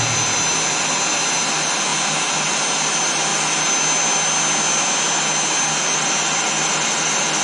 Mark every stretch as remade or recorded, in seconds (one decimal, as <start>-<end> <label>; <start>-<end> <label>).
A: 0.0-7.4 recorded